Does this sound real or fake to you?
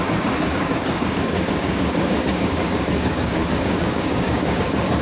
fake